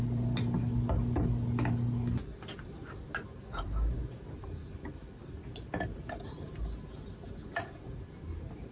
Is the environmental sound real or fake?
real